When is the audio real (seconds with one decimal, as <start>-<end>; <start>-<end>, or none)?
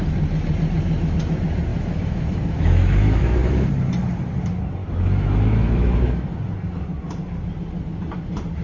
0.0-1.7; 3.7-4.8; 6.3-8.6